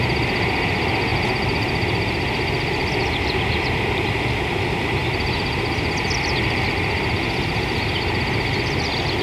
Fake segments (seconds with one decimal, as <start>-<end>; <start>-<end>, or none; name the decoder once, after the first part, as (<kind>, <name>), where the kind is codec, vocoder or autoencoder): none